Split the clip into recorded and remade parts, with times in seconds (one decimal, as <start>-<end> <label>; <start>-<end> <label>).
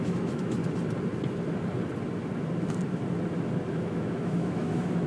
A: 0.0-0.6 remade; 0.6-3.7 recorded; 3.7-5.1 remade